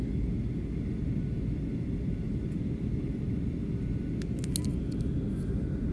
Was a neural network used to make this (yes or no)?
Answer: no